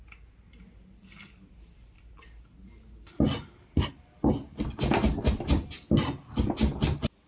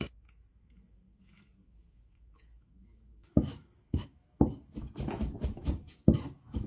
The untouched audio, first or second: first